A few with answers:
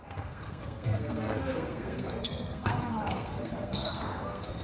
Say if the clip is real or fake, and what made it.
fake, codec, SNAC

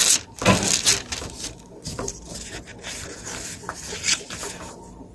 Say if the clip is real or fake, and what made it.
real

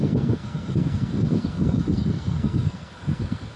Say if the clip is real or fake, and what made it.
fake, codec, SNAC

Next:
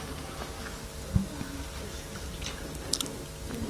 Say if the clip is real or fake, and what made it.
real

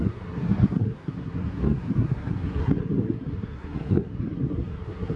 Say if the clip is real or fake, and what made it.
fake, codec, SNAC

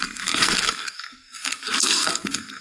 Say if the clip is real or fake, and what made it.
fake, codec, SNAC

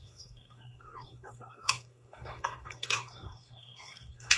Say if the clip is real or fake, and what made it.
fake, codec, SNAC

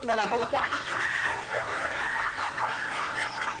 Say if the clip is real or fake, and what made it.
fake, codec, SNAC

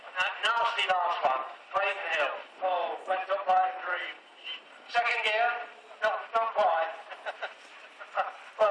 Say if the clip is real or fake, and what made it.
real